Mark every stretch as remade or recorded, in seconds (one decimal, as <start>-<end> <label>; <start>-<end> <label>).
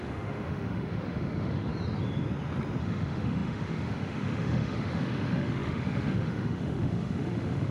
0.0-1.7 remade; 1.7-2.8 recorded; 2.8-7.7 remade